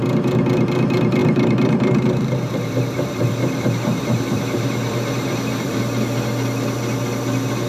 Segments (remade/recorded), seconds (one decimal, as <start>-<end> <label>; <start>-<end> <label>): 0.0-1.2 recorded; 1.2-5.8 remade; 5.8-7.7 recorded